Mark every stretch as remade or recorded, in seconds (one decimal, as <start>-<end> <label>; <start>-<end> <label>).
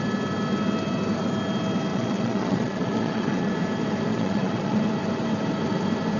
0.0-1.9 recorded; 1.9-3.5 remade; 3.5-4.1 recorded; 4.1-4.8 remade; 4.8-6.2 recorded